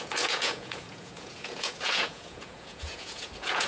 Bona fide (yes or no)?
no